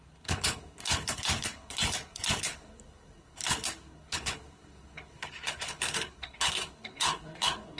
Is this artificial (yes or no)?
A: yes